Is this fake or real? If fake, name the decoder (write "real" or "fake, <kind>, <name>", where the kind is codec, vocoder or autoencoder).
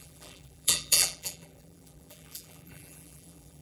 fake, vocoder, BigVGAN v2